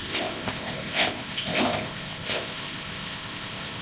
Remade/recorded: remade